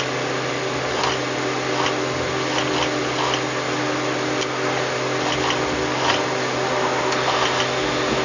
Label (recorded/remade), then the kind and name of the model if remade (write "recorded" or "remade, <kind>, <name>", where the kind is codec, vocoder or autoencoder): recorded